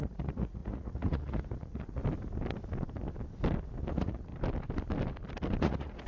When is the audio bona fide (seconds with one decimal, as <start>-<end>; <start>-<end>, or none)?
2.0-3.9; 4.3-5.6